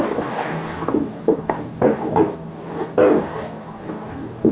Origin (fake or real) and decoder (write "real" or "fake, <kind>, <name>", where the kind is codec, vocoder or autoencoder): fake, codec, DAC